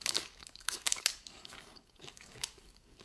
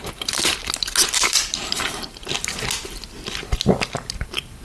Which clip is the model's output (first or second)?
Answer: first